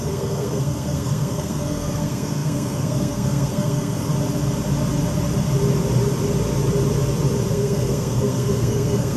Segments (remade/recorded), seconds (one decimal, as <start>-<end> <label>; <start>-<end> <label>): 0.0-4.1 remade; 4.1-7.5 recorded; 7.5-9.2 remade

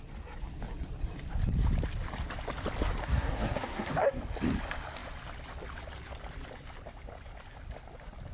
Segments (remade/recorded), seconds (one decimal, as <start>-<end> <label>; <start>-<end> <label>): 0.0-3.0 recorded; 3.0-4.2 remade; 4.2-8.3 recorded

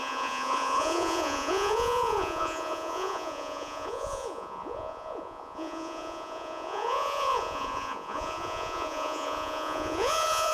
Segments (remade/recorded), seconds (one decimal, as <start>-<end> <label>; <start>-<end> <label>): 0.0-10.5 remade